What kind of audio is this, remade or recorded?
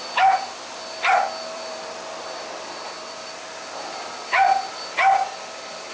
remade